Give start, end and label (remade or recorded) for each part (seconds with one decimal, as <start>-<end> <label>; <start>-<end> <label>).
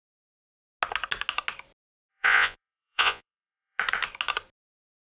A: 0.0-2.1 recorded; 2.1-3.8 remade; 3.8-5.1 recorded